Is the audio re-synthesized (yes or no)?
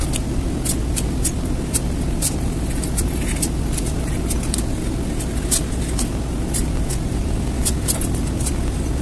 no